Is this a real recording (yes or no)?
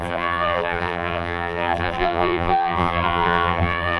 no